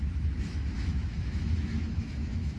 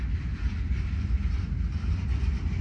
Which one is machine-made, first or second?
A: first